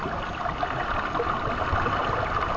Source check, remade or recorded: recorded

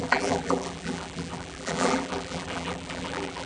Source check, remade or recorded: remade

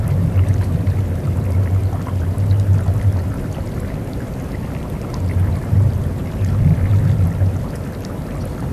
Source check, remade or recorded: recorded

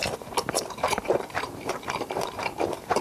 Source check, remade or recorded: remade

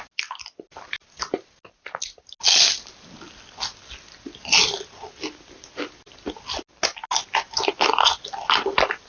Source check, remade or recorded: recorded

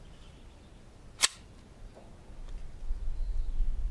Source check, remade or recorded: recorded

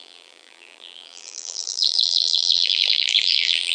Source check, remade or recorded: remade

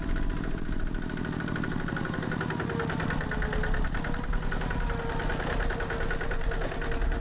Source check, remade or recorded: recorded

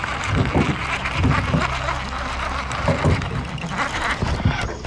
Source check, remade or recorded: recorded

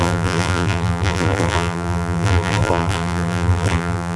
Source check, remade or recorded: remade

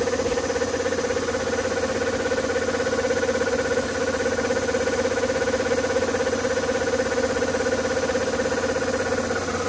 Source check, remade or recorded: recorded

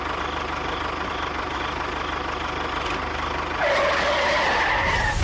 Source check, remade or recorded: recorded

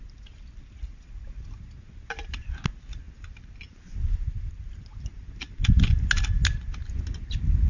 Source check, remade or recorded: recorded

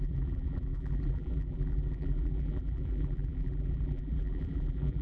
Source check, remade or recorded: remade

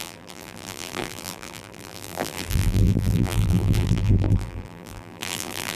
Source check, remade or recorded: remade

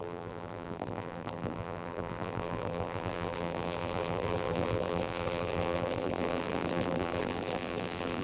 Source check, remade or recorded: remade